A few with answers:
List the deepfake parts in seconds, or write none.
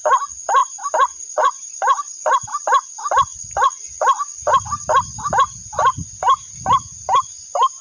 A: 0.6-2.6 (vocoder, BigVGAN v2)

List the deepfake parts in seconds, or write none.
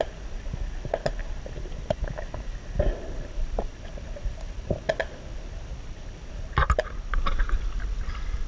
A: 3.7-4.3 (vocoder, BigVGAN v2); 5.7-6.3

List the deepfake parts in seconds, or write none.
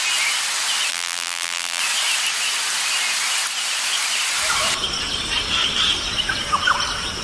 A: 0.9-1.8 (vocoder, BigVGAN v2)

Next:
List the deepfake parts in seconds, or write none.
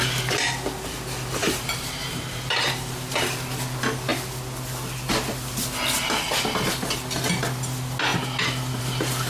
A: 1.4-3.2 (vocoder, BigVGAN v2)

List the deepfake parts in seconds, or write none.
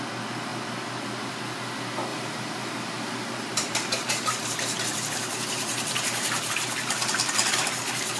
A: 2.1-6.5 (vocoder, BigVGAN v2)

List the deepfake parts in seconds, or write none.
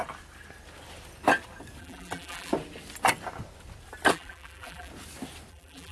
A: 1.8-2.5 (vocoder, BigVGAN v2); 4.1-4.9; 5.5-5.9